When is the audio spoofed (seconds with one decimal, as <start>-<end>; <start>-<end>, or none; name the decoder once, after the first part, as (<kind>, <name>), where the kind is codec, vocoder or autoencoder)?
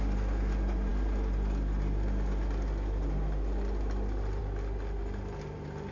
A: none